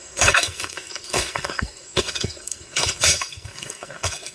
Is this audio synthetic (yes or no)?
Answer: yes